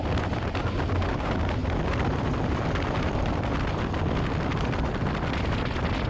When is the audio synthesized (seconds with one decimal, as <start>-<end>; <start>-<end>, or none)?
1.6-3.3